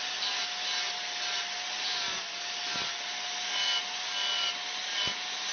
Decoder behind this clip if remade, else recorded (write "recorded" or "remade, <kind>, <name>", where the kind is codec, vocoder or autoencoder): recorded